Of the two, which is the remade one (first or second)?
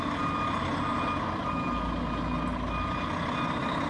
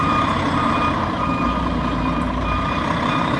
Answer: second